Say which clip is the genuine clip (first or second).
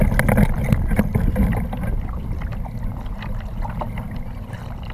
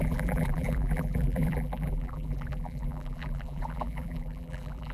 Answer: first